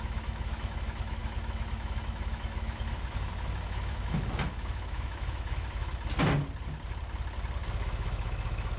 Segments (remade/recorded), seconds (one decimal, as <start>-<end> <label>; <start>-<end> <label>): 0.0-5.9 remade; 5.9-7.8 recorded; 7.8-8.8 remade